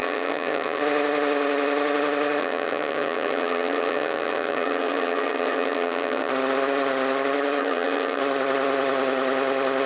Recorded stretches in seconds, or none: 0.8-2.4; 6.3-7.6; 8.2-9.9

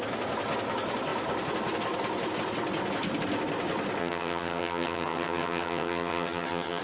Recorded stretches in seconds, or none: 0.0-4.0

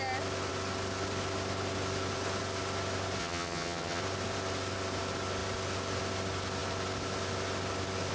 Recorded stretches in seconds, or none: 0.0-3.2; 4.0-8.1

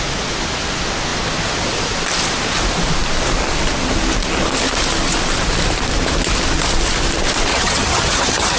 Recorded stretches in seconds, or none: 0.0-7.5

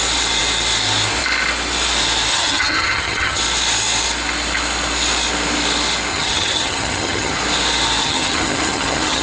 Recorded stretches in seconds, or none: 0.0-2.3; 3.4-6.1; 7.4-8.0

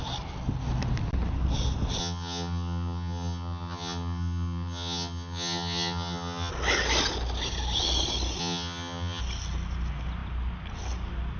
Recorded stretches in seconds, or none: 0.0-2.0; 6.5-8.4; 9.2-11.4

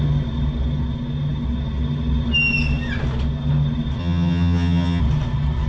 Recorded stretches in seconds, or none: 0.0-4.0; 5.0-5.7